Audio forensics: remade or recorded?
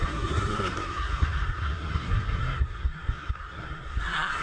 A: remade